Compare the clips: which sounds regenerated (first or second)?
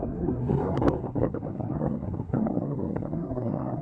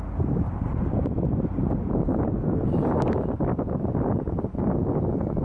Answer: first